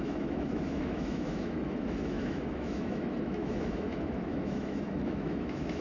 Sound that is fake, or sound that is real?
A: fake